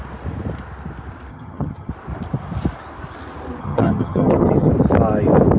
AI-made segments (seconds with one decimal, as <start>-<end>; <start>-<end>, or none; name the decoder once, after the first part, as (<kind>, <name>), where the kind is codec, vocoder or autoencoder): 1.3-1.9 (vocoder, HiFi-GAN); 3.6-4.7